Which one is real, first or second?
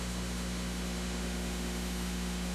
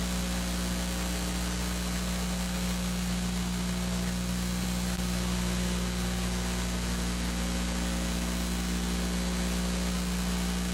second